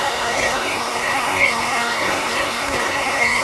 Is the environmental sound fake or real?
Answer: fake